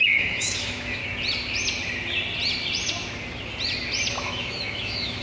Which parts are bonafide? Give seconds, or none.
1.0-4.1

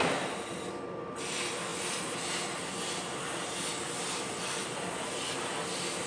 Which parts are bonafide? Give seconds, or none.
0.0-6.1

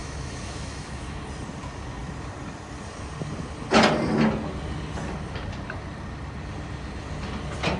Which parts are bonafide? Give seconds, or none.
1.2-7.8

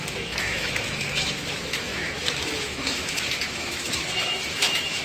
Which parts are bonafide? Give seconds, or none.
none

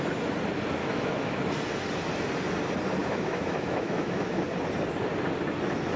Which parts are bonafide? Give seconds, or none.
0.0-0.8; 1.4-3.0; 4.4-6.0

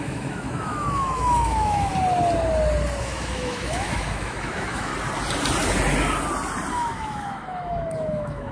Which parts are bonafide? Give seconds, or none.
1.9-3.0; 4.9-6.7

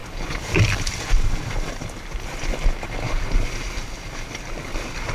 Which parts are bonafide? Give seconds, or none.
0.0-5.1

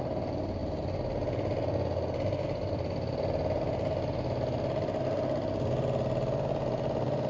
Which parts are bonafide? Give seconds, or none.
0.0-7.3